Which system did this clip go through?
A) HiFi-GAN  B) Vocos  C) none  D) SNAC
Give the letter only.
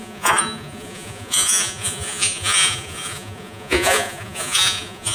B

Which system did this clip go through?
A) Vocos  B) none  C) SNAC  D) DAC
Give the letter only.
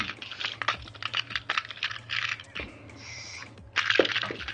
B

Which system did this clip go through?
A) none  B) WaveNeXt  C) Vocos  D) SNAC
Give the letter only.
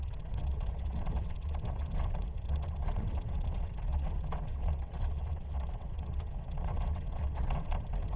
B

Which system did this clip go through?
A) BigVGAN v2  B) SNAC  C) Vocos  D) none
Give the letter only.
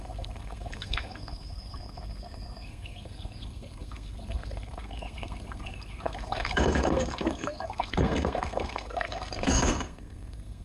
B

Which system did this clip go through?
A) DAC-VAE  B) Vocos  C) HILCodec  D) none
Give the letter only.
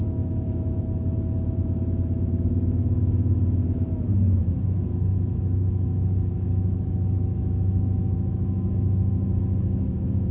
A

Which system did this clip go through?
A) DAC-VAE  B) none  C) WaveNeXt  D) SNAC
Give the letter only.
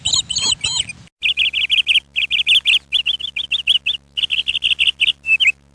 B